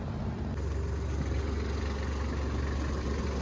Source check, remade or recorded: recorded